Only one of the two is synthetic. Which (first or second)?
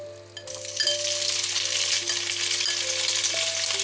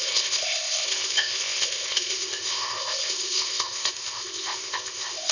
second